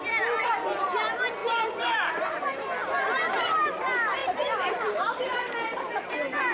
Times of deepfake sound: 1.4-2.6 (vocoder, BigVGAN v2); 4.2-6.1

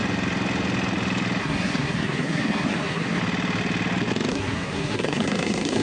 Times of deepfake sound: 1.4-3.2 (codec, SNAC); 4.3-5.8

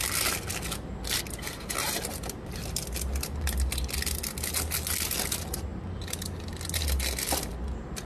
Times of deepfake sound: none

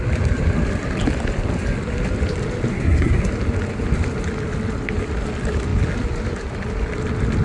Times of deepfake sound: 2.7-3.3 (codec, SNAC)

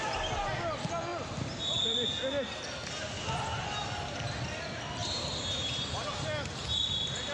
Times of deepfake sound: none

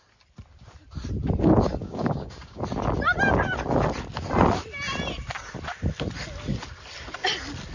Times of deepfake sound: 1.8-2.6 (codec, DAC)